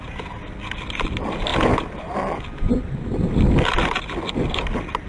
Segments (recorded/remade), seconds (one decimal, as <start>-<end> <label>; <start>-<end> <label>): 0.0-5.1 recorded